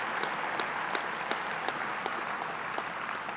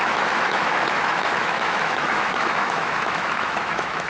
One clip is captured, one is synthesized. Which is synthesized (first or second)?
second